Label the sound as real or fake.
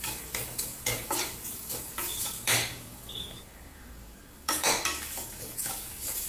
fake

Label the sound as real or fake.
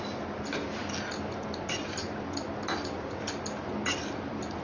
real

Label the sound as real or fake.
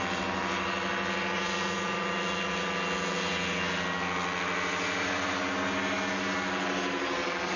real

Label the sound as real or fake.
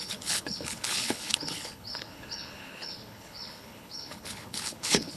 fake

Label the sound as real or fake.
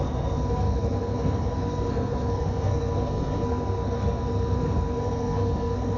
fake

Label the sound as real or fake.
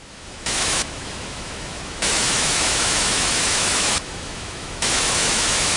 fake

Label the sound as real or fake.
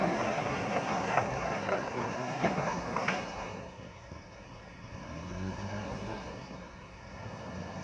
fake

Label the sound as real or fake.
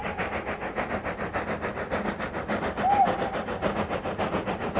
real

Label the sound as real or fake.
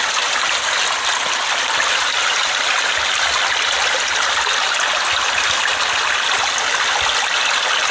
real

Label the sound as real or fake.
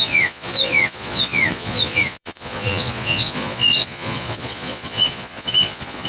fake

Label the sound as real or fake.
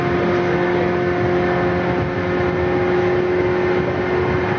real